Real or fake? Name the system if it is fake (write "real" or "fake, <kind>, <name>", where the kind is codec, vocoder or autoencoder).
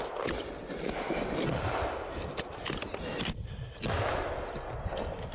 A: real